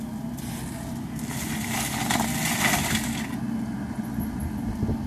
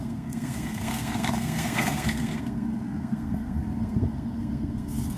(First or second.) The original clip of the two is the first